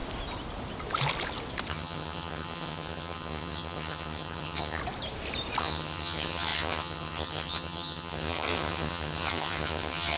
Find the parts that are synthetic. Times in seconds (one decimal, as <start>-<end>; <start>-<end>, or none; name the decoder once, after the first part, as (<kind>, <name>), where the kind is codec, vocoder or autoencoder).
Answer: 1.7-4.8 (vocoder, HiFi-GAN); 5.6-10.2